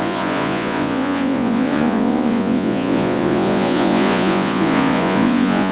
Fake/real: fake